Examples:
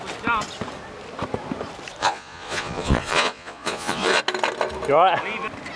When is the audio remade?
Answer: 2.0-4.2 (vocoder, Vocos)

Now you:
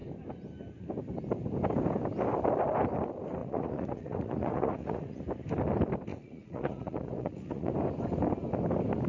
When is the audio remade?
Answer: 3.4-5.2 (vocoder, Vocos); 6.1-7.7

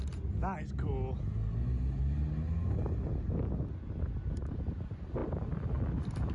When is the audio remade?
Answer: none

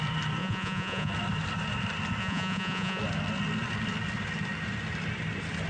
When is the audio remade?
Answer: 0.4-1.1 (vocoder, Vocos); 2.2-3.0